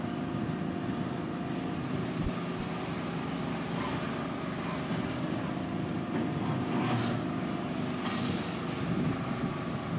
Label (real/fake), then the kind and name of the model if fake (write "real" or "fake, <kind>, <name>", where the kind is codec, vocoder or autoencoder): real